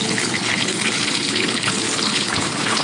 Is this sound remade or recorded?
remade